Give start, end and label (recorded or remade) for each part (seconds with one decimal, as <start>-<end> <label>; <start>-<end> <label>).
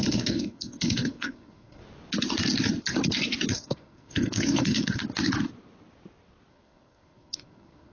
0.0-1.8 remade; 1.8-3.5 recorded; 3.5-5.0 remade; 5.0-6.5 recorded; 6.5-7.9 remade